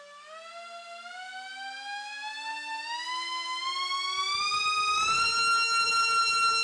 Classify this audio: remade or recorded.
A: recorded